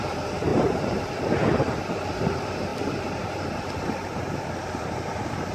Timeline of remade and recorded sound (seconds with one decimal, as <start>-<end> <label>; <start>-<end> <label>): 0.0-5.5 remade